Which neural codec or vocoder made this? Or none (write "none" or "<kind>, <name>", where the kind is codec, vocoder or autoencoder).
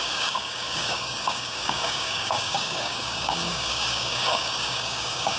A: codec, DAC